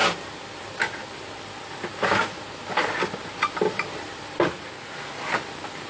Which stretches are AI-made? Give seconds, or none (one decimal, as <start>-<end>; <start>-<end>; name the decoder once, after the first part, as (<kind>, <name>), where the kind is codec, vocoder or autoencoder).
none

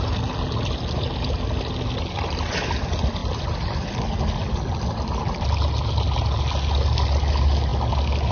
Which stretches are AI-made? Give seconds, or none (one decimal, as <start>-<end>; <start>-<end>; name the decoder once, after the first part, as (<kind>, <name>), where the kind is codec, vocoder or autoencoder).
none